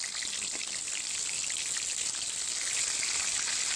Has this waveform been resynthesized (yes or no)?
no